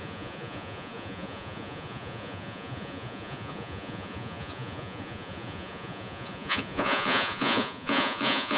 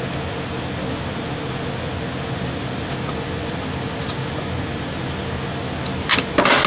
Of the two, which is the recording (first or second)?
second